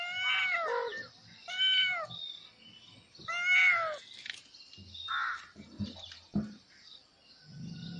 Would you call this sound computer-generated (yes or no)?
no